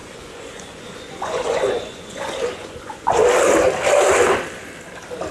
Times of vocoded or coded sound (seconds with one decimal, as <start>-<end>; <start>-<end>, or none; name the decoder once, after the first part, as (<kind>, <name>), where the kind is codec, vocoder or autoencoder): 0.0-3.2 (vocoder, Vocos)